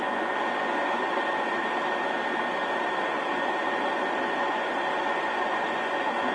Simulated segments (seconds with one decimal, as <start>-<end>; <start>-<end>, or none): 0.0-1.5; 3.1-6.3